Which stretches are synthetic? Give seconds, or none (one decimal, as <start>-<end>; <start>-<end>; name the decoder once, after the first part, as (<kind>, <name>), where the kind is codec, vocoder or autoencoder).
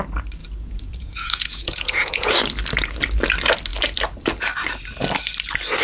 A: 0.4-2.3 (vocoder, Vocos)